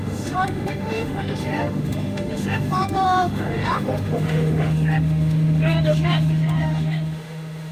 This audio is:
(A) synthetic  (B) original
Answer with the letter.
A